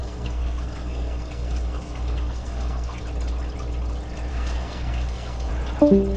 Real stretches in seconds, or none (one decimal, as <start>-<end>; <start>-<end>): 3.0-4.3; 5.5-6.2